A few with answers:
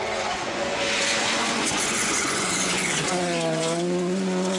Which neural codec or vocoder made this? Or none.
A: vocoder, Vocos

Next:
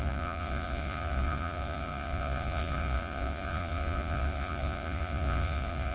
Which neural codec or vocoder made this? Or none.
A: vocoder, Vocos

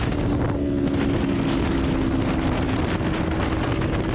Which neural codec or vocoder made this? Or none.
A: none